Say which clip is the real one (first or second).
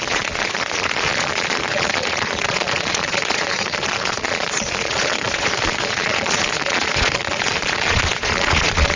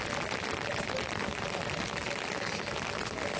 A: second